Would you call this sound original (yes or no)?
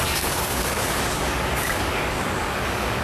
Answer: no